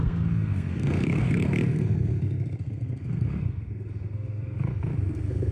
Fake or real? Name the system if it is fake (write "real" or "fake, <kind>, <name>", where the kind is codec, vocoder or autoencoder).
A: fake, codec, SNAC